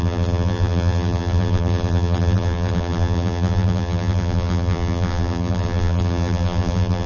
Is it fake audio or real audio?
fake